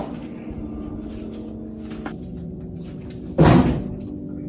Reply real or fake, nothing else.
real